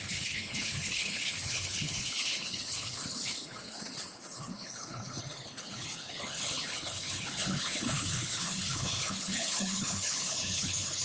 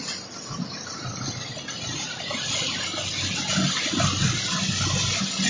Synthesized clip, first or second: first